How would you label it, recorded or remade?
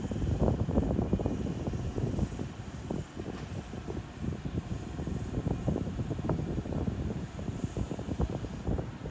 remade